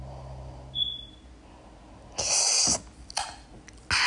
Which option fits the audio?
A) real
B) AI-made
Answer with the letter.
A